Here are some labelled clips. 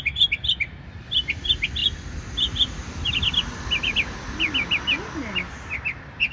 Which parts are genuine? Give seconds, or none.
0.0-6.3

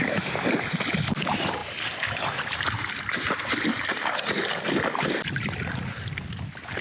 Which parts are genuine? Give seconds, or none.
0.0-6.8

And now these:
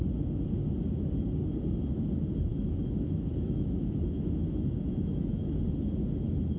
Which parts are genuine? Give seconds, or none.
0.0-2.5; 5.6-6.6

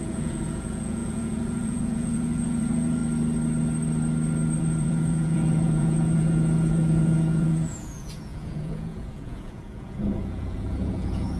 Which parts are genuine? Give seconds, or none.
3.0-4.6